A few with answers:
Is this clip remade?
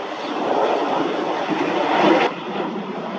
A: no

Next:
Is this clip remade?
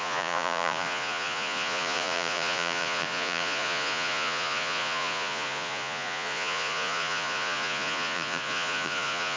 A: yes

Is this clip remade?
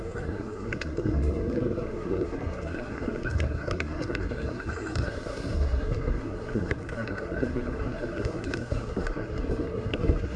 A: yes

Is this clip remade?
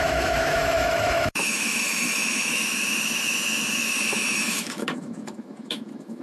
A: yes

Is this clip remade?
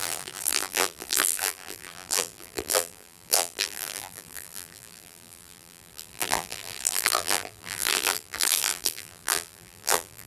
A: yes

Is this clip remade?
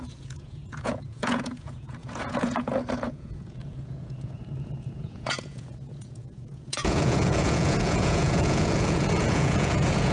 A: yes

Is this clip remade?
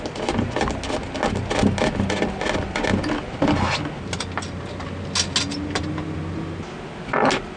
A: no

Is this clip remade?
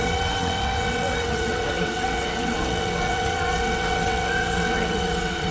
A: yes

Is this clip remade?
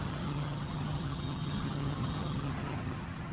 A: yes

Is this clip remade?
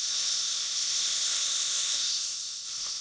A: yes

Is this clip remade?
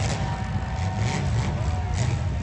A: no